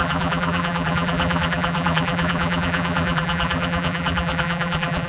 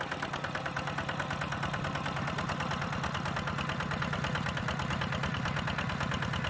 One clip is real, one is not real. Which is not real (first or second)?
first